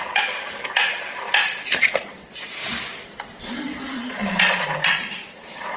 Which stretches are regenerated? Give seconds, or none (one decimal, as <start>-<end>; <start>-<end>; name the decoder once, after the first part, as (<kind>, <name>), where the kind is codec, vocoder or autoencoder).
1.6-2.6 (vocoder, Vocos); 3.4-4.2; 5.0-5.8